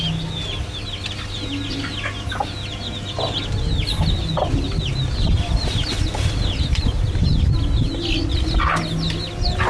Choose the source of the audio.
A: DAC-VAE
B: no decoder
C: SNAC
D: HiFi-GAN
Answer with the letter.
B